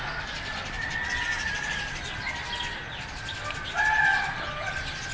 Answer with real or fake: real